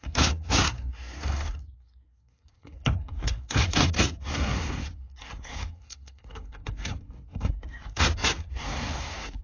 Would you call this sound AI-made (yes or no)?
yes